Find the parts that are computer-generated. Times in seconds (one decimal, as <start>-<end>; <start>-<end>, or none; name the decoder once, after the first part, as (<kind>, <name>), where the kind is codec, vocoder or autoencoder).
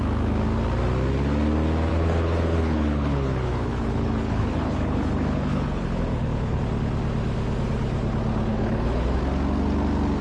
1.9-6.6 (codec, HILCodec); 8.5-9.2